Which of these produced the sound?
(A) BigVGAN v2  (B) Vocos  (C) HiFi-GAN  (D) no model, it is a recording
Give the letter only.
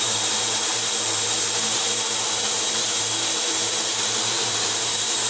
A